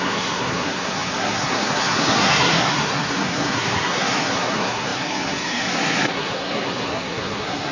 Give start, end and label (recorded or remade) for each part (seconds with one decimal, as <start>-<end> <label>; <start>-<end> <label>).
0.0-7.7 remade